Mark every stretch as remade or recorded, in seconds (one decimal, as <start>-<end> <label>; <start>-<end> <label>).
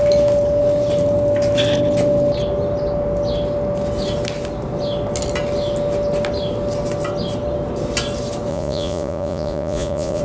0.0-8.5 recorded; 8.5-10.2 remade